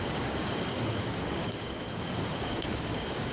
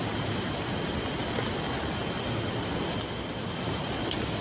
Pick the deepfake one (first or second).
first